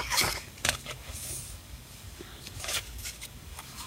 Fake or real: fake